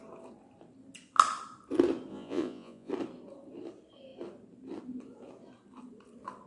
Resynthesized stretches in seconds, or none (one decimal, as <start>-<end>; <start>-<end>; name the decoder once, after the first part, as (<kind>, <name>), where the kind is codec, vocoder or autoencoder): 2.1-2.9 (vocoder, Vocos)